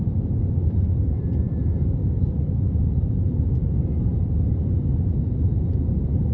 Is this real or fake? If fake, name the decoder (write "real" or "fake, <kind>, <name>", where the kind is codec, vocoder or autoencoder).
real